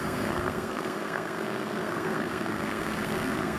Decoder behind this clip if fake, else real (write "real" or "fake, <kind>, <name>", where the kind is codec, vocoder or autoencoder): fake, codec, SNAC